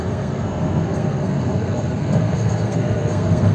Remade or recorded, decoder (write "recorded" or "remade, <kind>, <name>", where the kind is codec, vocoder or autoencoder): remade, codec, SNAC